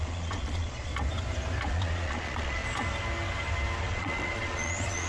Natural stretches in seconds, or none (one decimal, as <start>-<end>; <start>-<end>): 0.9-1.7; 2.6-3.8